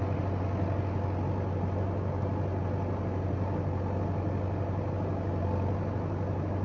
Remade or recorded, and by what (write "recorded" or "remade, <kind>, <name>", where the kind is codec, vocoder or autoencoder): recorded